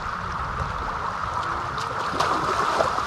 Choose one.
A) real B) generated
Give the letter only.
A